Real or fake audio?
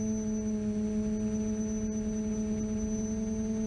real